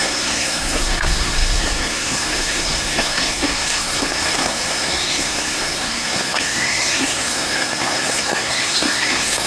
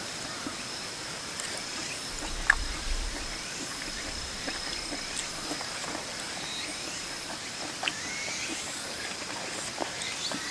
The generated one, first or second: first